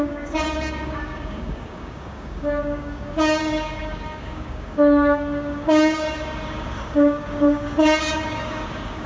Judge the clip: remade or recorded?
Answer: remade